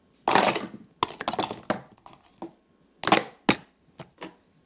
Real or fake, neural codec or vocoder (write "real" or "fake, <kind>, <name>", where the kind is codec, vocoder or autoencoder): real